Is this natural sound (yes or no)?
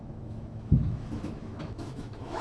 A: no